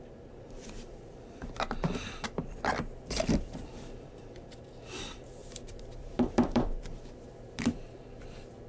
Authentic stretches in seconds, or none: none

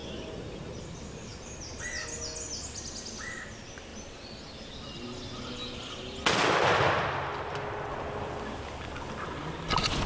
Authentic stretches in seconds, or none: 0.0-10.1

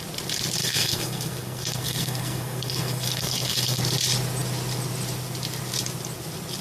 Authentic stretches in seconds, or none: 0.0-0.6; 3.8-6.6

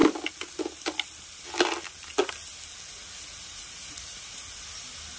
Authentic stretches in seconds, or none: 0.0-3.0; 4.6-5.2

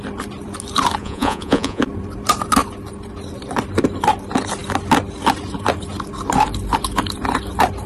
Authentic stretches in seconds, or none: 0.0-1.0; 1.8-7.9

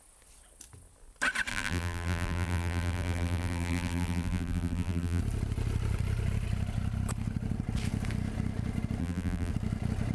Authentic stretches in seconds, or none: 0.0-1.5; 5.2-9.0; 9.5-10.1